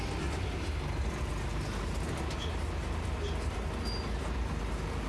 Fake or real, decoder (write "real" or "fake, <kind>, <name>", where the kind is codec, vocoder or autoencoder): real